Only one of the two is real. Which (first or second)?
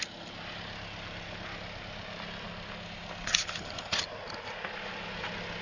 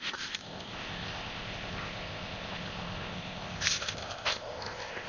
first